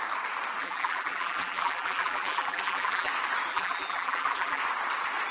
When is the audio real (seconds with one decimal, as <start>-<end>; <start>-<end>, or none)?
0.0-0.6; 3.1-3.5; 4.6-5.3